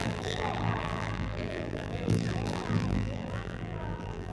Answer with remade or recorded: remade